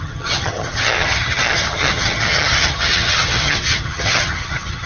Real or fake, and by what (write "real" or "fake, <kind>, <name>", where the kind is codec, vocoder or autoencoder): fake, vocoder, HiFi-GAN